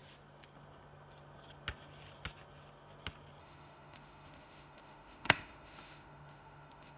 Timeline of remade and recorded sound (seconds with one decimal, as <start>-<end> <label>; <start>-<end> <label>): 0.0-3.4 recorded; 3.4-7.0 remade